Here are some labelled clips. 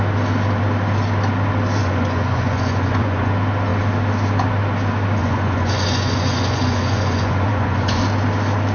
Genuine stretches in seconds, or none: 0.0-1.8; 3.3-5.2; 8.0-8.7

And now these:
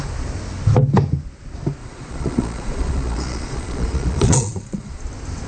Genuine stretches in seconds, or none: 0.0-1.8; 5.0-5.5